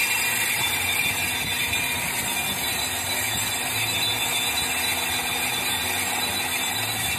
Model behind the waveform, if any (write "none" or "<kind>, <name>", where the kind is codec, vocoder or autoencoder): none